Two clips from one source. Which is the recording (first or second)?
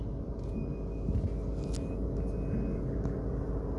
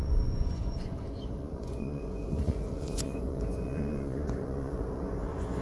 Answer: first